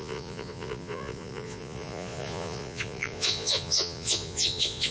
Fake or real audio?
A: fake